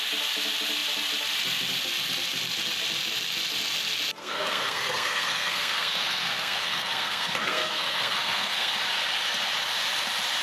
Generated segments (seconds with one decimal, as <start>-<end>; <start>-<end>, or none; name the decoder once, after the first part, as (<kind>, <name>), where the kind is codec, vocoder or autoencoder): 4.2-8.7 (codec, SNAC)